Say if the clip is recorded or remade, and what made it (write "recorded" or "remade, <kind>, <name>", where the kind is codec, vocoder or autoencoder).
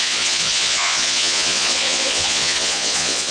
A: remade, vocoder, Vocos